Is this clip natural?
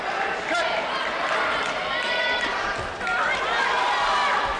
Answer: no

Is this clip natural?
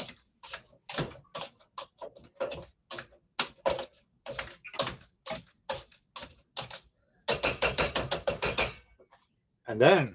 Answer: yes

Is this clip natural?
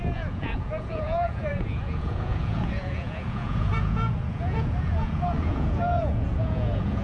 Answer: no